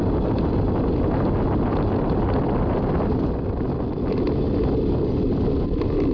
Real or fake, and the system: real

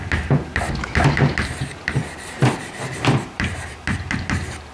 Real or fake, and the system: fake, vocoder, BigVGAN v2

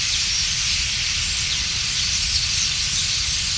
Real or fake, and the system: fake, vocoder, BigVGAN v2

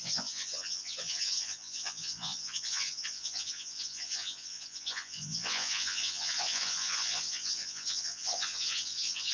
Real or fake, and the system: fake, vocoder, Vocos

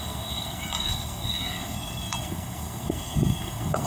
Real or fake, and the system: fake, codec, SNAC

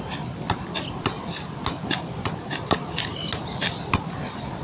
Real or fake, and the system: real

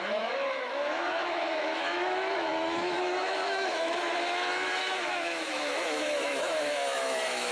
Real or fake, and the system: fake, autoencoder, DAC-VAE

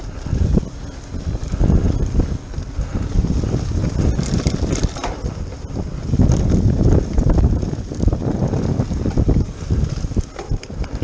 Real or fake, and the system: real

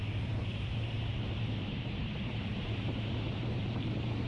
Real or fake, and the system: fake, vocoder, BigVGAN v2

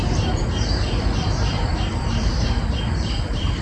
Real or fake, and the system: fake, vocoder, BigVGAN v2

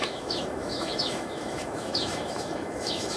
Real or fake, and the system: fake, autoencoder, DAC-VAE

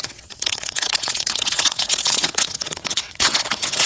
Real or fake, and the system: fake, vocoder, WaveNeXt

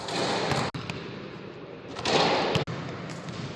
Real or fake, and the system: real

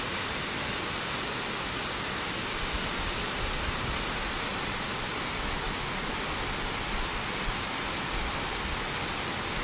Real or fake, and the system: real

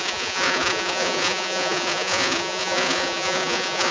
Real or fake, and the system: fake, vocoder, Vocos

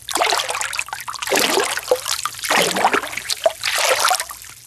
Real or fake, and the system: real